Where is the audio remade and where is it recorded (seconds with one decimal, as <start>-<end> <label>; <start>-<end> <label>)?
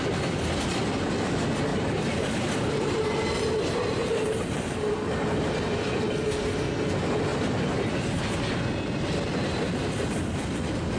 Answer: 0.0-1.7 recorded; 1.7-4.9 remade; 4.9-7.3 recorded; 7.3-8.2 remade; 8.2-11.0 recorded